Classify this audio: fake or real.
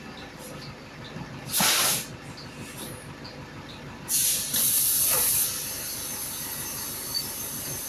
real